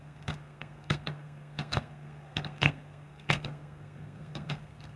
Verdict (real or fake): fake